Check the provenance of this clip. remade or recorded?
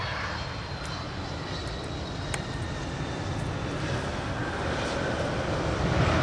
recorded